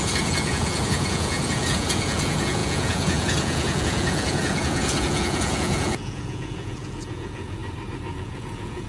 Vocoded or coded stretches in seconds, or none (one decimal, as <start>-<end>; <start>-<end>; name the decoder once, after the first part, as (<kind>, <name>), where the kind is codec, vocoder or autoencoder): 0.0-7.6 (vocoder, Vocos); 8.1-8.9